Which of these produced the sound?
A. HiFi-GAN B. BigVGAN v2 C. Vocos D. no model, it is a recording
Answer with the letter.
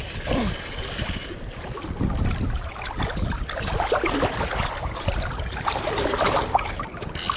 D